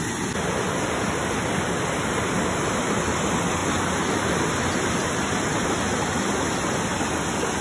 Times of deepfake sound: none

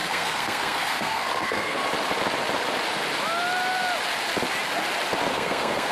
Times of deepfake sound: 0.0-1.8 (codec, SNAC); 5.3-5.9

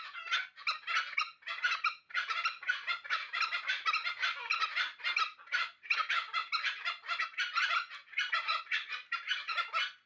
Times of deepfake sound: none

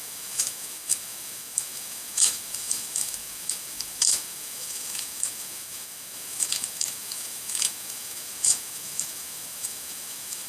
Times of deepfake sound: 0.0-10.5 (autoencoder, DAC-VAE)